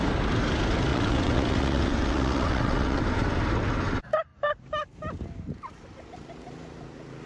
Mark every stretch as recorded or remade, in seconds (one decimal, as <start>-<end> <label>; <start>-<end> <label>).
0.0-0.9 recorded; 0.9-3.0 remade; 3.0-7.3 recorded